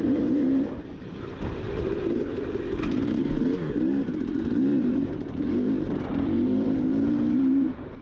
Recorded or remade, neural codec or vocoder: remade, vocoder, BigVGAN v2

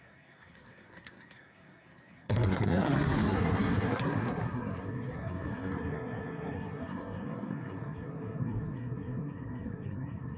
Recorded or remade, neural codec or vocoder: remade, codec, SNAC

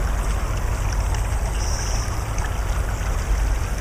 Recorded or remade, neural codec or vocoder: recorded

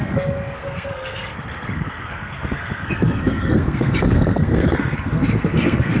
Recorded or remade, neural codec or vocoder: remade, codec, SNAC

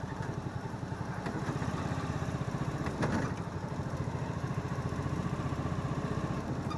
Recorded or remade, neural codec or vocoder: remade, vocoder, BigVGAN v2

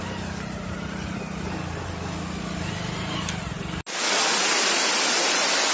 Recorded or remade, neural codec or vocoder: recorded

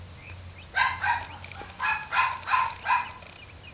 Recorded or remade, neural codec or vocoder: recorded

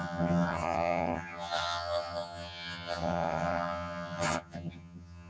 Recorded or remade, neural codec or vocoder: remade, vocoder, HiFi-GAN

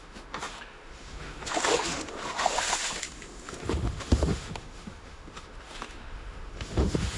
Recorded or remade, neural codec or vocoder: remade, autoencoder, DAC-VAE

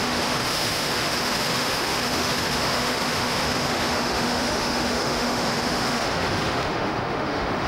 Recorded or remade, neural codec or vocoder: remade, autoencoder, DAC-VAE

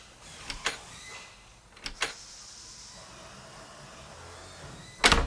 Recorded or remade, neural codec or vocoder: recorded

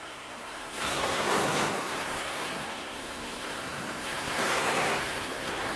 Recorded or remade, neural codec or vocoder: remade, codec, SNAC